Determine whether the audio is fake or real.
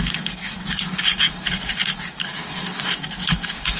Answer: fake